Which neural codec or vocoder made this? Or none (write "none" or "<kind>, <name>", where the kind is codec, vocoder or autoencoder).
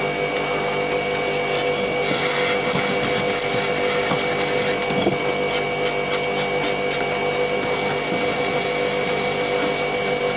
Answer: none